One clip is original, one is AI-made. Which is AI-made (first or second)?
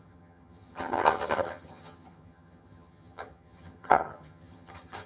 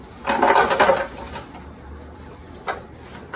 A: first